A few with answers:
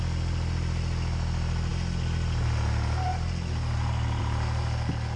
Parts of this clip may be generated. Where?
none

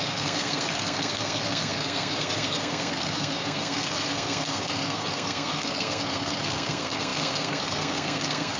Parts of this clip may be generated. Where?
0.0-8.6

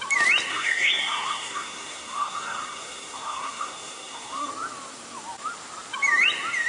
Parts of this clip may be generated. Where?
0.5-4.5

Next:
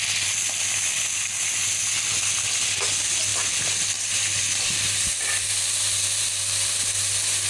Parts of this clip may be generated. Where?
none

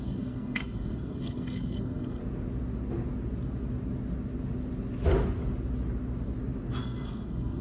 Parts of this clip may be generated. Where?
0.0-2.2; 6.8-7.6